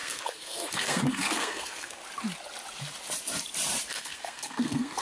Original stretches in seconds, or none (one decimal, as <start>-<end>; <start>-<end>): 2.0-3.9